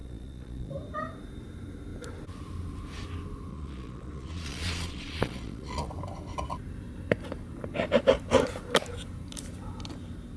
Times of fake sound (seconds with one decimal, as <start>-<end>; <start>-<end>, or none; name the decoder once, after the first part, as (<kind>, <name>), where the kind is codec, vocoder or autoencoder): 0.0-0.7 (vocoder, Vocos); 3.5-5.9